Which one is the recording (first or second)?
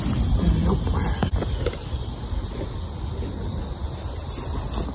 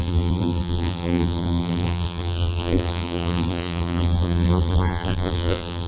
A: first